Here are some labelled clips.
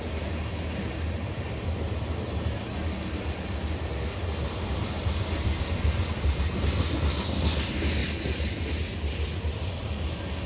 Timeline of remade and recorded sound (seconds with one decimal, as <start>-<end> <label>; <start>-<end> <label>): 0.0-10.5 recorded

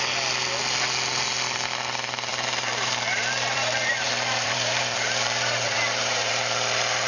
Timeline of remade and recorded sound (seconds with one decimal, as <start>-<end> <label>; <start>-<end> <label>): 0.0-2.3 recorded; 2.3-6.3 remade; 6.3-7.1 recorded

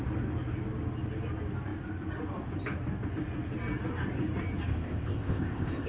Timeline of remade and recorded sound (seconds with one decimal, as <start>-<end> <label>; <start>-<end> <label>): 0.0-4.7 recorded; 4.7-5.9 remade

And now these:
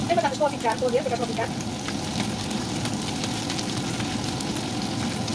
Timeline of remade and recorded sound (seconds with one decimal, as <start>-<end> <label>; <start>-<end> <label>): 0.0-5.3 recorded

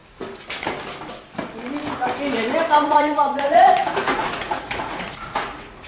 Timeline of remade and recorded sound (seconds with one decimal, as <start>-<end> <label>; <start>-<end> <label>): 0.0-2.8 recorded; 2.8-5.9 remade

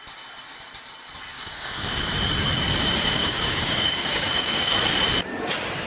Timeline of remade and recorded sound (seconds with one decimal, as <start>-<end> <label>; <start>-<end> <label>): 0.0-1.3 recorded; 1.3-2.0 remade; 2.0-3.2 recorded; 3.2-4.7 remade; 4.7-5.9 recorded

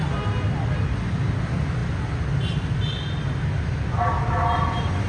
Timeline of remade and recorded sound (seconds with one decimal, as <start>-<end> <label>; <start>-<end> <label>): 0.0-5.1 recorded

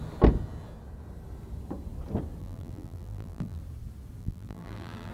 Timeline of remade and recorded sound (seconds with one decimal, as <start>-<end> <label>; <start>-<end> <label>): 0.0-2.4 recorded; 2.4-3.6 remade; 3.6-4.2 recorded; 4.2-5.1 remade